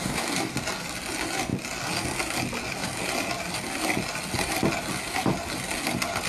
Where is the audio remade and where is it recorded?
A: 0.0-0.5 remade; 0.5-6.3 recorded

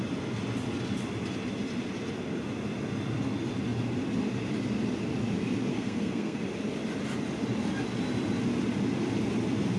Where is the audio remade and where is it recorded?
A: 0.0-5.7 recorded; 5.7-6.4 remade; 6.4-9.8 recorded

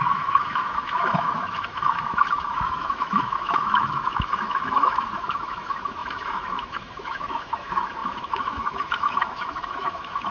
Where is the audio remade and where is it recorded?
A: 0.0-10.3 remade

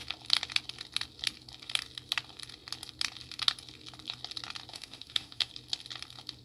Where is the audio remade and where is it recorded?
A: 0.0-4.7 recorded; 4.7-5.5 remade; 5.5-6.4 recorded

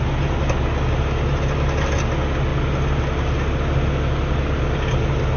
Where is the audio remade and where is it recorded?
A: 0.0-5.4 recorded